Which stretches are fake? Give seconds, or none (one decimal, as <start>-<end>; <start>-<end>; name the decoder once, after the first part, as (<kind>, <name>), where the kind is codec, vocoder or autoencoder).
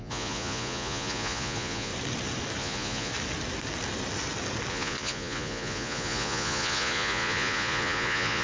0.0-1.9 (vocoder, Vocos); 2.6-3.1; 4.7-8.4